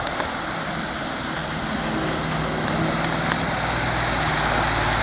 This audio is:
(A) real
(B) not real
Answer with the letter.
A